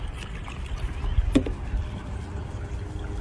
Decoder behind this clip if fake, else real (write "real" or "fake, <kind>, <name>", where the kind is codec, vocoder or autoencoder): real